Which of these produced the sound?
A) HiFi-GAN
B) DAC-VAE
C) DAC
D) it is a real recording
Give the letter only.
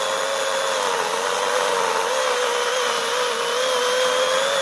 D